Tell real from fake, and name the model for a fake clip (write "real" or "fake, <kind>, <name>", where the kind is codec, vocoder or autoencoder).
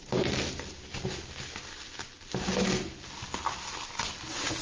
real